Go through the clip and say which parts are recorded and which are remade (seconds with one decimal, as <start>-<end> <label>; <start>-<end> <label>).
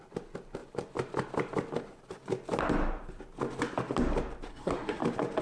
0.0-4.5 recorded; 4.5-5.0 remade; 5.0-5.4 recorded